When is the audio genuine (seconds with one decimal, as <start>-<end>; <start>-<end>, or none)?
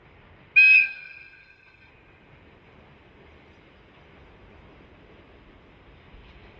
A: 0.0-0.8; 1.9-6.6